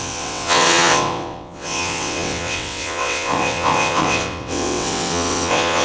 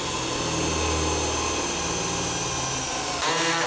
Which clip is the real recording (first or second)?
second